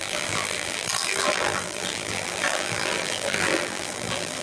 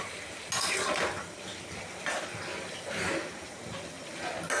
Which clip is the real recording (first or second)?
second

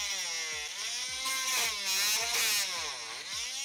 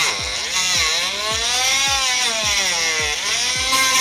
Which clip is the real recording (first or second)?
first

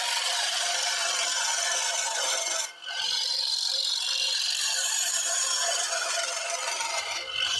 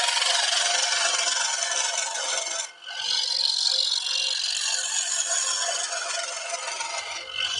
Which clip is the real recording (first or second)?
second